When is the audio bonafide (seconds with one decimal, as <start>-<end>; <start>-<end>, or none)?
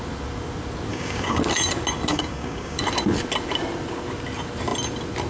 0.0-0.9; 1.4-2.1; 2.8-5.3